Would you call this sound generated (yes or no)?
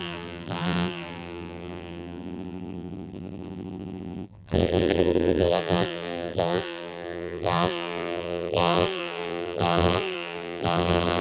yes